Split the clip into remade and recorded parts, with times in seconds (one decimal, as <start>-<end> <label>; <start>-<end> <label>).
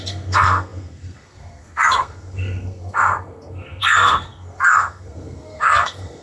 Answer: 0.0-6.2 remade